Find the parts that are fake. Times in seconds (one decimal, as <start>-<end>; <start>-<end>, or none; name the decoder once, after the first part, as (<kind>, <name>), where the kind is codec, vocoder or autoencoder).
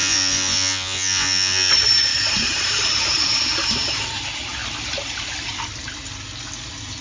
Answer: 0.0-1.7 (vocoder, Vocos)